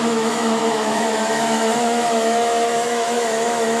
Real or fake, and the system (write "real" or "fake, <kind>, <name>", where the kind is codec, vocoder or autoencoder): fake, autoencoder, DAC-VAE